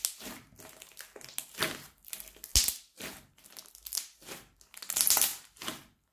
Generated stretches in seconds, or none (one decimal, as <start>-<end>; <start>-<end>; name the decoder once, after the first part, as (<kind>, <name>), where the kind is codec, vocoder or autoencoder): none